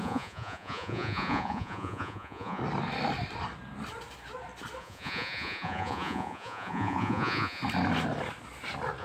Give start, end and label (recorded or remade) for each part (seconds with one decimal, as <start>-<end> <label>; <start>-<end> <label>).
0.0-2.6 remade; 2.6-4.8 recorded; 4.8-7.6 remade; 7.6-9.0 recorded